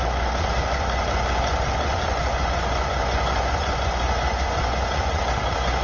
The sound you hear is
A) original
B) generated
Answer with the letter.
B